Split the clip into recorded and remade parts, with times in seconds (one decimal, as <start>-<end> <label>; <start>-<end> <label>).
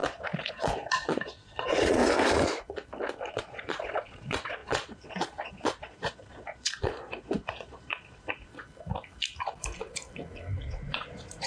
0.0-2.0 remade; 2.0-3.3 recorded; 3.3-8.5 remade; 8.5-10.6 recorded; 10.6-11.5 remade